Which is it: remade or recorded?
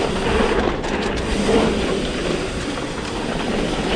recorded